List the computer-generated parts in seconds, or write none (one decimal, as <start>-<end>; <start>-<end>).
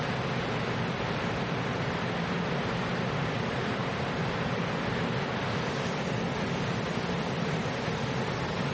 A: none